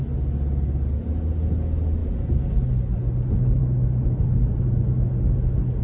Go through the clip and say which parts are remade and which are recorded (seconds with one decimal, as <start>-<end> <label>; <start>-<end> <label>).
0.0-5.8 recorded